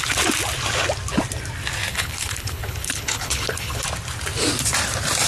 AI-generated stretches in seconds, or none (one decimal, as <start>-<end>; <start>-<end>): 1.9-3.8